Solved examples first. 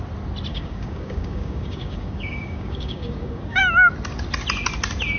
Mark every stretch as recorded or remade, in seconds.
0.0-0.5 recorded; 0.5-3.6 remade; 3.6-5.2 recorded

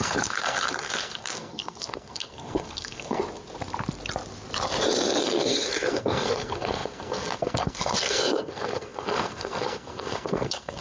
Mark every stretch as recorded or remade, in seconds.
0.0-3.2 remade; 3.2-5.2 recorded; 5.2-10.8 remade